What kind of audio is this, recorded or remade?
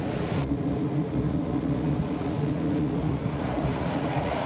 remade